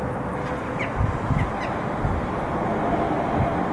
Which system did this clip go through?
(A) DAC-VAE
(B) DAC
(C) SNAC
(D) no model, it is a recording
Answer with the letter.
D